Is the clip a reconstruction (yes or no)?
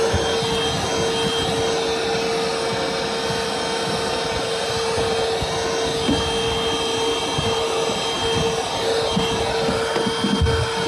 no